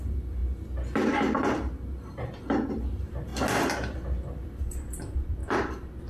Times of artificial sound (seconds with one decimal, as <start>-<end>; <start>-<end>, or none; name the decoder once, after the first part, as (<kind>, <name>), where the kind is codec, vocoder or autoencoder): 0.0-0.4 (vocoder, BigVGAN v2); 2.7-3.3; 4.3-5.4